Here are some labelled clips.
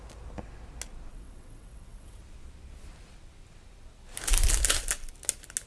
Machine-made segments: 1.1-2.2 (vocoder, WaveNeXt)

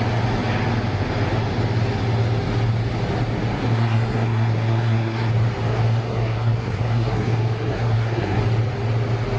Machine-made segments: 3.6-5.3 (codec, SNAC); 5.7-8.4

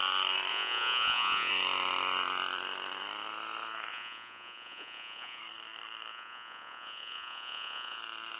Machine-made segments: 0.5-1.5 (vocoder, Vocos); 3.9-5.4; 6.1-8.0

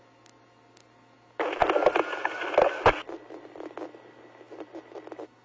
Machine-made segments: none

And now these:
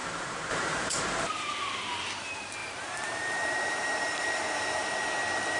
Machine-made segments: 0.0-1.3 (vocoder, BigVGAN v2); 2.6-4.8

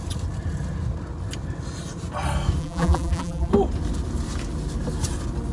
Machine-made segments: 2.6-3.5 (vocoder, BigVGAN v2)

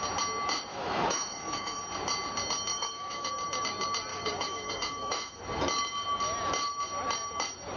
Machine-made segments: 0.7-1.8 (autoencoder, DAC-VAE); 2.7-3.3; 4.1-5.4